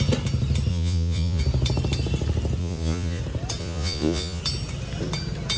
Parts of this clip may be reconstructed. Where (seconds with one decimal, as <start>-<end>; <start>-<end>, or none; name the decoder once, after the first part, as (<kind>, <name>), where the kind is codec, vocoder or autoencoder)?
0.7-1.4 (vocoder, Vocos); 2.6-3.2; 3.6-4.4